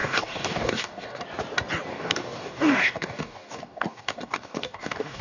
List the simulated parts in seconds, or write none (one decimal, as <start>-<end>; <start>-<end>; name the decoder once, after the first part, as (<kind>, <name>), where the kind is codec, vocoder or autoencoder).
0.0-1.2 (codec, DAC); 1.9-5.2